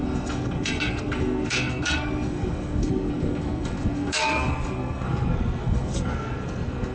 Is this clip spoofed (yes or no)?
yes